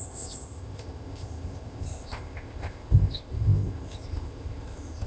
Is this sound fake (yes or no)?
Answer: yes